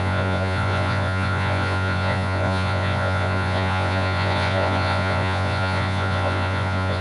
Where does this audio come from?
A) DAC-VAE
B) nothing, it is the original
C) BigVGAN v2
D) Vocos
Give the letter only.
D